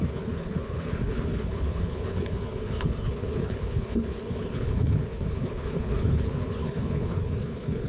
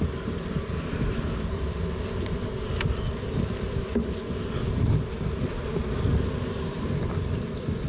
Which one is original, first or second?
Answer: second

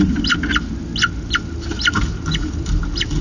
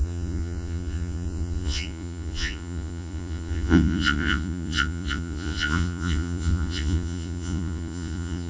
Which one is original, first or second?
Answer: first